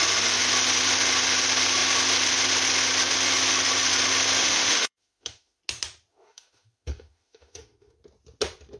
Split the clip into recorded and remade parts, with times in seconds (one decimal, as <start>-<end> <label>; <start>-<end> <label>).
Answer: 0.0-4.4 recorded; 4.4-5.6 remade; 5.6-6.1 recorded; 6.1-8.0 remade; 8.0-8.8 recorded